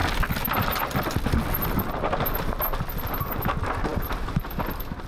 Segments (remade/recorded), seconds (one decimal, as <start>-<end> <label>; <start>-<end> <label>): 0.0-5.1 recorded